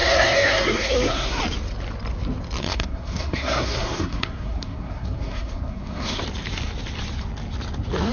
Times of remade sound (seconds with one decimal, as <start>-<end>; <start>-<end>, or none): 0.0-1.4; 2.6-6.2